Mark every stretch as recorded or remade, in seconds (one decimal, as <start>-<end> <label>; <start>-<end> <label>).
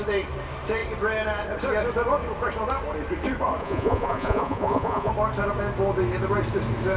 0.0-3.6 recorded; 3.6-5.1 remade; 5.1-7.0 recorded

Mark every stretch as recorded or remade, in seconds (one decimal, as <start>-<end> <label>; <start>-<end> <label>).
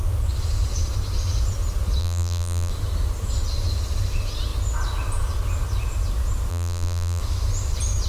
0.0-2.0 recorded; 2.0-2.7 remade; 2.7-6.5 recorded; 6.5-7.2 remade; 7.2-8.1 recorded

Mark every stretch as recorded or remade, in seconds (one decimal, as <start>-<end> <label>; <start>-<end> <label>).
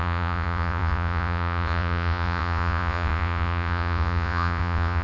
0.0-5.0 remade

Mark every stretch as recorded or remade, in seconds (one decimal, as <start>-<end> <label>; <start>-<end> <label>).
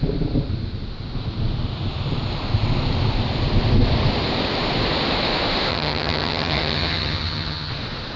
0.0-5.7 recorded; 5.7-7.7 remade; 7.7-8.2 recorded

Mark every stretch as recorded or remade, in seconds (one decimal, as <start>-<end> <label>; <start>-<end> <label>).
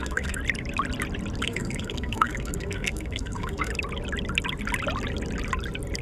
0.0-0.4 remade; 0.4-1.4 recorded; 1.4-3.7 remade; 3.7-6.0 recorded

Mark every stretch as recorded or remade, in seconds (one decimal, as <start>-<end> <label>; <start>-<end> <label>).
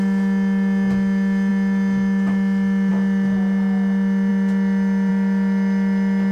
0.0-6.3 recorded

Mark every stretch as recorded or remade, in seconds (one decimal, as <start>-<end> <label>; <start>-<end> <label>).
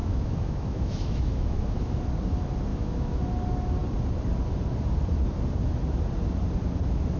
0.0-2.0 remade; 2.0-2.7 recorded; 2.7-3.2 remade; 3.2-7.2 recorded